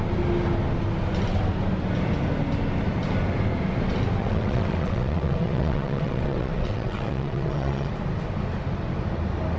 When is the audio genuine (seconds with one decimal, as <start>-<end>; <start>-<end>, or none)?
0.0-4.2; 7.9-9.6